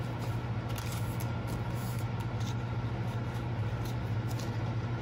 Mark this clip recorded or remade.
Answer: recorded